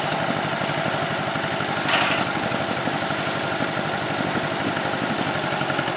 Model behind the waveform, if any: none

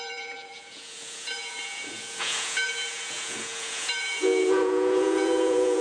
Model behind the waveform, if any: vocoder, Vocos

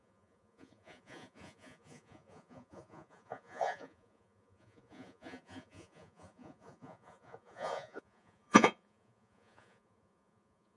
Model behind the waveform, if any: vocoder, Vocos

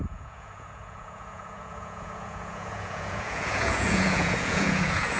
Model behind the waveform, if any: vocoder, Vocos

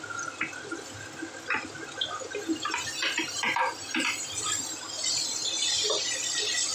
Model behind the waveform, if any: none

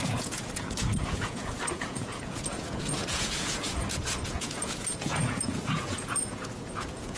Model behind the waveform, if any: vocoder, Vocos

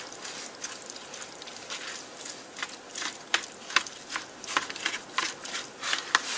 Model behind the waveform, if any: none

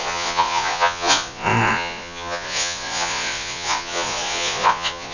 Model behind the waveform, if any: vocoder, Vocos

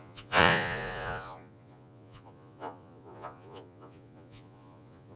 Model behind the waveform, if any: vocoder, Vocos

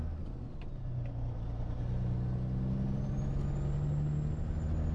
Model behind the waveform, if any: none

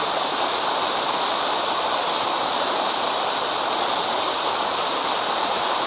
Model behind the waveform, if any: none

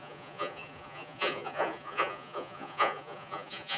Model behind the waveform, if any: vocoder, Vocos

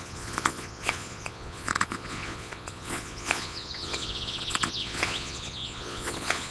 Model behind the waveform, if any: vocoder, Vocos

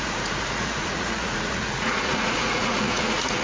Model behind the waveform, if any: vocoder, Vocos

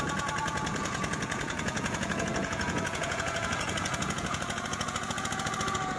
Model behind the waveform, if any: vocoder, Vocos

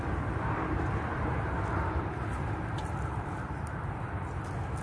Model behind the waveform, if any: none